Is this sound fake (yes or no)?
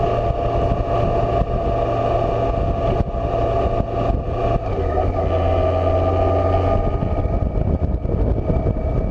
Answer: no